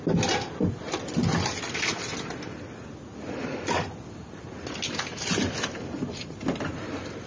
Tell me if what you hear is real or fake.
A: real